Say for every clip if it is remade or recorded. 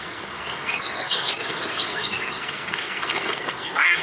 remade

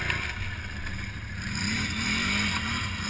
recorded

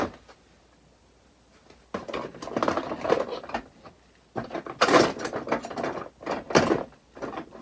recorded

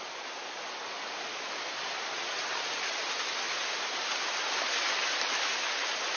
recorded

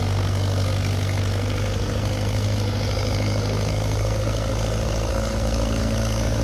remade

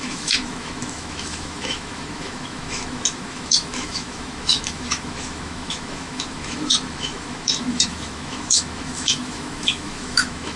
remade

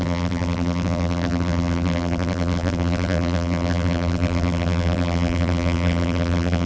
remade